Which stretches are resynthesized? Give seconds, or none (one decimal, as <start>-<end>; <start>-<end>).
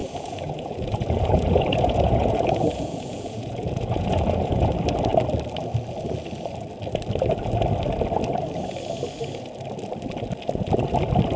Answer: 0.0-4.6